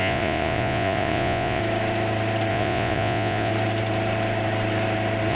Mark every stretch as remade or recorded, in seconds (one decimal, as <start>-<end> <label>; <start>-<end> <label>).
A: 0.0-1.6 remade; 1.6-2.5 recorded; 2.5-3.5 remade; 3.5-5.3 recorded